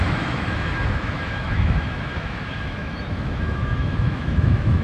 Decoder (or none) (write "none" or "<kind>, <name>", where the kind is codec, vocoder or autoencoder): autoencoder, DAC-VAE